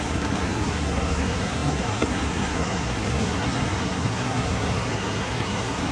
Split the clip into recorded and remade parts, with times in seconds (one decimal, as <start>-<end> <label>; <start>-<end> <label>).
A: 0.0-5.9 remade